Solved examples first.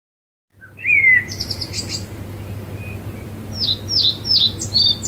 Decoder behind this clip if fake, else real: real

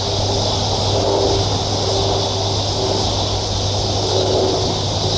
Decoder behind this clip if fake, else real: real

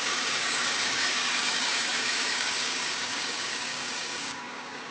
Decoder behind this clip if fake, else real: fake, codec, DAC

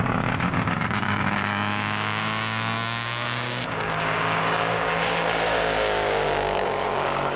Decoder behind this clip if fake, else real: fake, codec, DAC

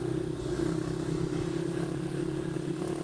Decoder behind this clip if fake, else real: fake, codec, DAC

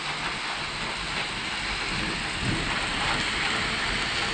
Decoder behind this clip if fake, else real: real